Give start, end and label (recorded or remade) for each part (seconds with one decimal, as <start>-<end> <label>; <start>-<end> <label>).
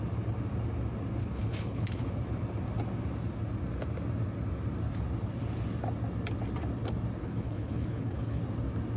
0.0-1.2 recorded; 1.2-2.1 remade; 2.1-7.2 recorded; 7.2-8.4 remade; 8.4-9.0 recorded